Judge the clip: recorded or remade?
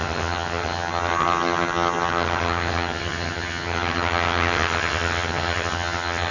remade